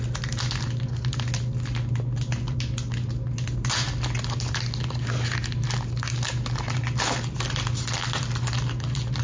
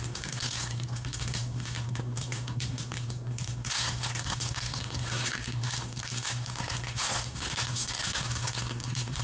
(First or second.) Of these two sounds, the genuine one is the first